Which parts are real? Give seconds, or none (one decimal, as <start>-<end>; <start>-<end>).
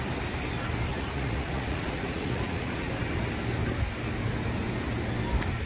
0.0-0.9; 2.9-5.7